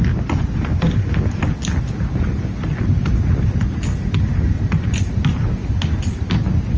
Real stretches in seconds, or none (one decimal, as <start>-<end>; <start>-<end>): 0.0-6.8